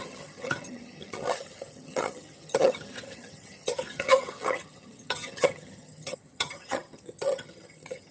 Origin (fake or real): fake